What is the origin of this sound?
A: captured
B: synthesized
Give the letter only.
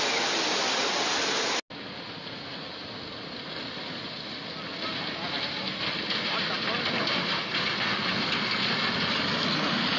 A